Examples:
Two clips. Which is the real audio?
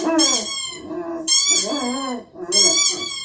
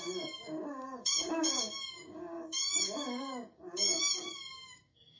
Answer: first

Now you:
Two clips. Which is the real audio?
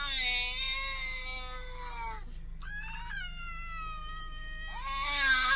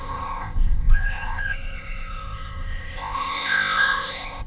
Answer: first